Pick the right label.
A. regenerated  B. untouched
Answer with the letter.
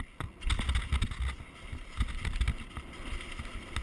B